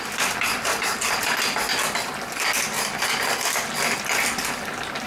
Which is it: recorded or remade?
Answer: recorded